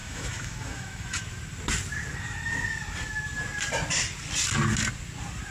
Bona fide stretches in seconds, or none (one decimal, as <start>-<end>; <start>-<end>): 1.2-5.5